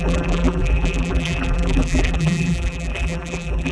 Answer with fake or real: fake